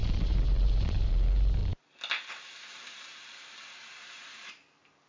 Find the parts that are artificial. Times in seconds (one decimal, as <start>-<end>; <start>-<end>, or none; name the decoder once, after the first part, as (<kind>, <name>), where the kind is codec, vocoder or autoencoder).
0.0-1.6 (vocoder, BigVGAN v2); 2.3-5.1